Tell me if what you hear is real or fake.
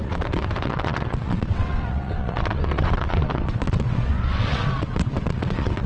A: fake